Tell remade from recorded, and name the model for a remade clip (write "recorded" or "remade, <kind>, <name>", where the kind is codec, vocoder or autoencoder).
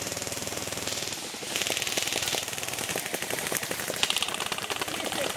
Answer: remade, vocoder, BigVGAN v2